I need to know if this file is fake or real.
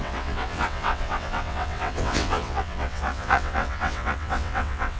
fake